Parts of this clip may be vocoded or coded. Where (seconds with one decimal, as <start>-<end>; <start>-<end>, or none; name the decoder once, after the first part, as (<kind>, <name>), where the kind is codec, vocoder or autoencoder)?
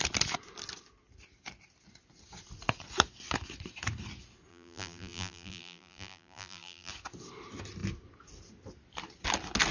4.5-6.9 (vocoder, BigVGAN v2)